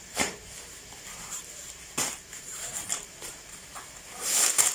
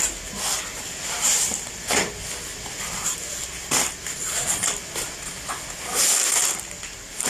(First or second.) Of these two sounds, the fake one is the first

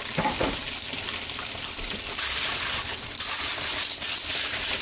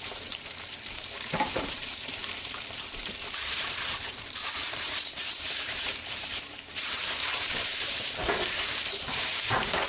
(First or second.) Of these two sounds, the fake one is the second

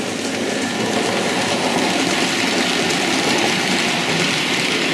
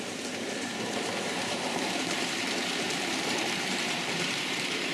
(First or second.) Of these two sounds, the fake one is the second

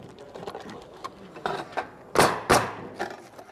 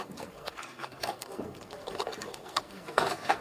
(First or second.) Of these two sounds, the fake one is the second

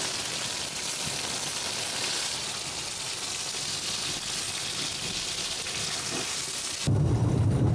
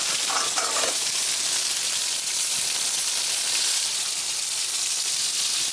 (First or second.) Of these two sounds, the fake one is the second